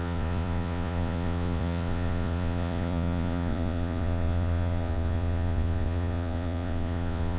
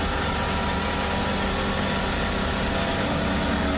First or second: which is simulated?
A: first